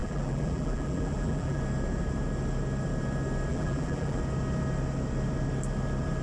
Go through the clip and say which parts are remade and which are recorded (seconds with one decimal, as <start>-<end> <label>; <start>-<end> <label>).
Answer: 0.0-1.6 remade; 1.6-3.5 recorded; 3.5-4.2 remade; 4.2-6.2 recorded

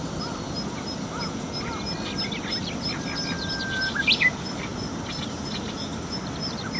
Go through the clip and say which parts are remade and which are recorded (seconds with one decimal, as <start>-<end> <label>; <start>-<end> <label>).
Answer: 0.0-6.8 recorded

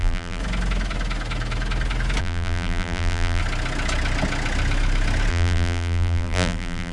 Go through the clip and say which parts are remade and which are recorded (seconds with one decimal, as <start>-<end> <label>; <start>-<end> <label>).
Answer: 0.0-0.4 remade; 0.4-2.2 recorded; 2.2-3.4 remade; 3.4-5.3 recorded; 5.3-6.9 remade

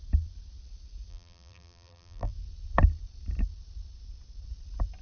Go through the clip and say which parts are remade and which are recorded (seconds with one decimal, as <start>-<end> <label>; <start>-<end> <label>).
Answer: 0.0-1.1 recorded; 1.1-2.3 remade; 2.3-5.0 recorded

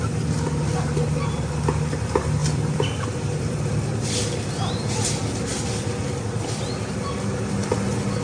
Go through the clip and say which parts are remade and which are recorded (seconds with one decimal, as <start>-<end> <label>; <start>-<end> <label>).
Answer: 0.0-2.4 recorded; 2.4-4.1 remade; 4.1-8.2 recorded